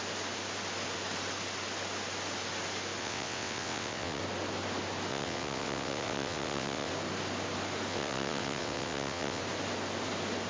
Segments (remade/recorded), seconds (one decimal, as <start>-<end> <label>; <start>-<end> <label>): 0.0-3.0 recorded; 3.0-4.2 remade; 4.2-5.1 recorded; 5.1-6.9 remade; 6.9-7.9 recorded; 7.9-9.4 remade; 9.4-10.5 recorded